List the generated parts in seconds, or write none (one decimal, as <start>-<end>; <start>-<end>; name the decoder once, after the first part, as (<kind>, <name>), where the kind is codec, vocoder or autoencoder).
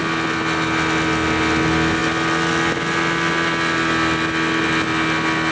none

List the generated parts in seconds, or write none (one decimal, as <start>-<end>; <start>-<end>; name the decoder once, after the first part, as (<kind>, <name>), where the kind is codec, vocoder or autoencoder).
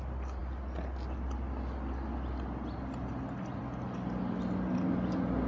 none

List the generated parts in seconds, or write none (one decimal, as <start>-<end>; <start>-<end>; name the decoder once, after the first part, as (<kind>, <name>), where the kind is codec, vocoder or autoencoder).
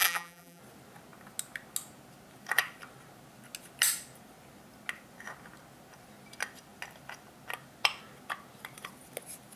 0.0-0.6 (vocoder, BigVGAN v2)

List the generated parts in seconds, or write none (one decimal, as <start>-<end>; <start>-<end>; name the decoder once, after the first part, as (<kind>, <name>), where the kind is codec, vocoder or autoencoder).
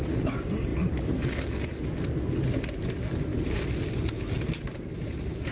0.7-1.5 (vocoder, BigVGAN v2)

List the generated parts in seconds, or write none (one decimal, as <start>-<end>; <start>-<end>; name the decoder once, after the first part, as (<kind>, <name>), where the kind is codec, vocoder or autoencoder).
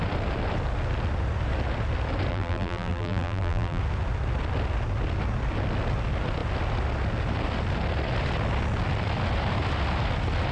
2.3-3.8 (vocoder, BigVGAN v2)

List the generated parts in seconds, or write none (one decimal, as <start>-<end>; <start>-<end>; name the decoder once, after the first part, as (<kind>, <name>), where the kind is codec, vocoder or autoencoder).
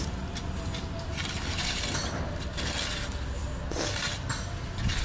none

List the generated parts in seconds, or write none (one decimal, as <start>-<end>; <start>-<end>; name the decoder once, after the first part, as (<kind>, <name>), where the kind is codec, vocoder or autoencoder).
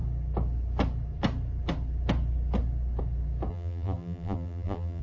3.5-5.0 (vocoder, BigVGAN v2)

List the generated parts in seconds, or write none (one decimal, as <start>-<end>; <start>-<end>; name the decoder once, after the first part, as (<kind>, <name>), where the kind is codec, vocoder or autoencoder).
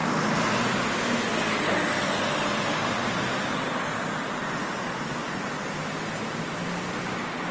none